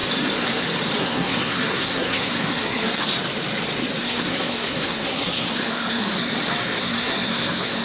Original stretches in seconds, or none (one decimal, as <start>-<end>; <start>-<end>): 0.0-1.0; 3.0-4.0; 6.3-6.8